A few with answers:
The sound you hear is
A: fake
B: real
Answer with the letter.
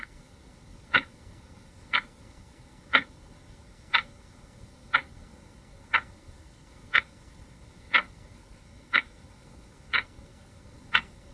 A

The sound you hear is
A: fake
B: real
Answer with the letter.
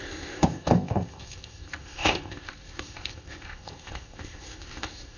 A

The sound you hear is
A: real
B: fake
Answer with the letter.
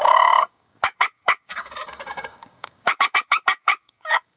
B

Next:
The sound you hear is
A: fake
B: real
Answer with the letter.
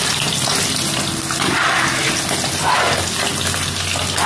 B